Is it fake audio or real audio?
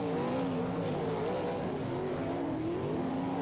real